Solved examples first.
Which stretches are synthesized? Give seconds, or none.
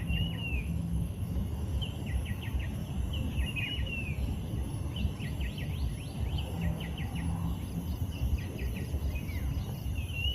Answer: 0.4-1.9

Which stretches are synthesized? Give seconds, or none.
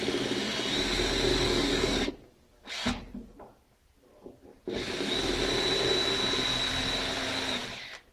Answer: 1.3-2.1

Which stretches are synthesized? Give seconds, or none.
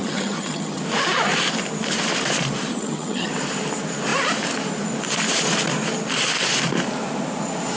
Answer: 0.0-0.8; 2.7-3.3